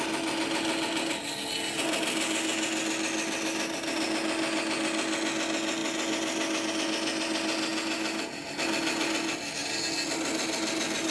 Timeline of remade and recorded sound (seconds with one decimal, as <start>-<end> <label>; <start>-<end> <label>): 0.0-11.1 recorded